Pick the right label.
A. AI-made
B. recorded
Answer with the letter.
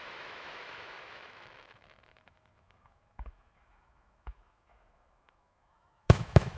A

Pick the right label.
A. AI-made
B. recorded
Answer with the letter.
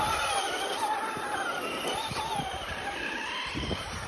B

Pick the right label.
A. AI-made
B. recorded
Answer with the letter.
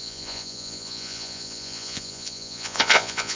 A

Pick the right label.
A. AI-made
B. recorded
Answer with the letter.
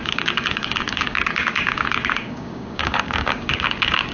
A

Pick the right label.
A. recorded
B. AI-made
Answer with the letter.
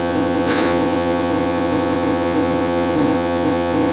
B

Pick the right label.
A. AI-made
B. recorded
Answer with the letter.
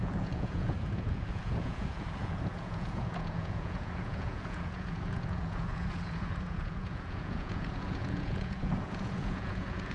A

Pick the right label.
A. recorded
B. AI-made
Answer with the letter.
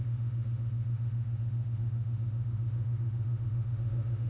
B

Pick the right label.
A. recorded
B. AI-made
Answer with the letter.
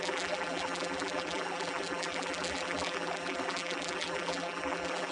B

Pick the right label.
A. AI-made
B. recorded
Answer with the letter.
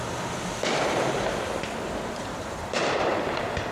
A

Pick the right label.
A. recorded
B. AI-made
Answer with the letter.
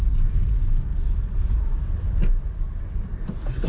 A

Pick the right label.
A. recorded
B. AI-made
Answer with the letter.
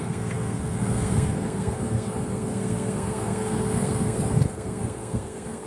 B